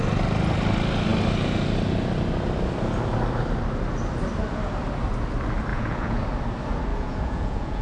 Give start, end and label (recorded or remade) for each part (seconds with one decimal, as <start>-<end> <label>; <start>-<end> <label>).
0.0-5.7 recorded; 5.7-6.2 remade; 6.2-6.9 recorded; 6.9-7.8 remade